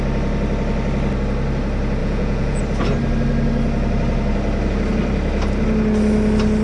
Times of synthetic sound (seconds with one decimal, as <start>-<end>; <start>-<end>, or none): 2.0-2.6